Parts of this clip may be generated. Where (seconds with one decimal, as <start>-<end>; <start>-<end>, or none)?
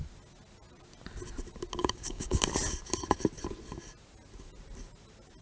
1.8-2.4